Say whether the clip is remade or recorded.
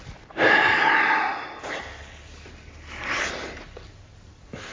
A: recorded